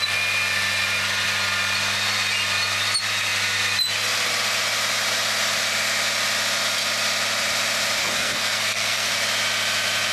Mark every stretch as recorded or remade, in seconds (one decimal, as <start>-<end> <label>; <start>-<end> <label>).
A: 0.0-8.0 recorded; 8.0-9.1 remade; 9.1-10.1 recorded